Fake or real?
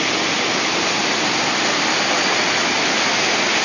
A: real